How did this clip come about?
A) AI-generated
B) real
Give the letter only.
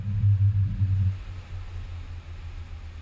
B